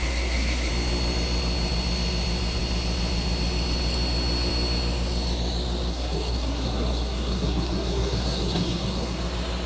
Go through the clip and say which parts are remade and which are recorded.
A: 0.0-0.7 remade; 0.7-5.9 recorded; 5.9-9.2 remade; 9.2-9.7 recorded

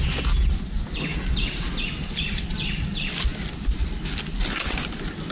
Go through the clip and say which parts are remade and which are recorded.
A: 0.0-5.3 recorded